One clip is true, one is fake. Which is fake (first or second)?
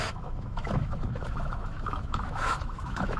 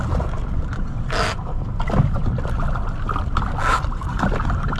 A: first